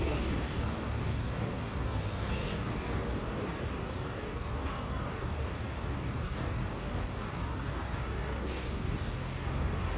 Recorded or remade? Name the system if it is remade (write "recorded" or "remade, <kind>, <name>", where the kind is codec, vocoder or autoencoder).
remade, codec, DAC